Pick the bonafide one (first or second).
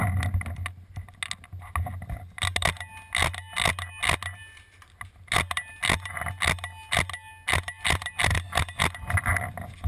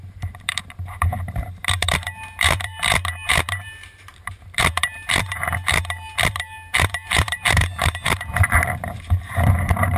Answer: first